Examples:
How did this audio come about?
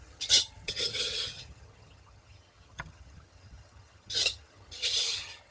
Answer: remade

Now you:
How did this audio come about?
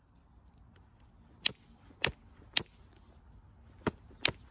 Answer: recorded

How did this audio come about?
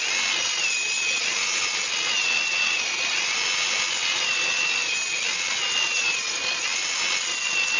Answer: recorded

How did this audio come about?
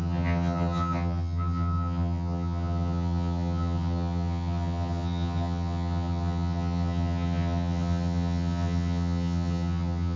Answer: remade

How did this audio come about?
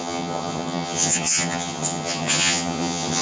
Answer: remade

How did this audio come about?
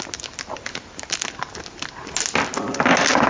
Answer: recorded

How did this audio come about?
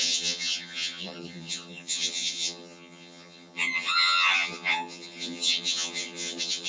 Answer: remade